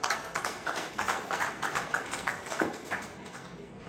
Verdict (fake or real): fake